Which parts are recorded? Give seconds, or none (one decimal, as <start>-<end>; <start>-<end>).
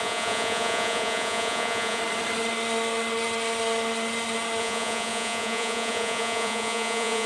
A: 2.0-4.6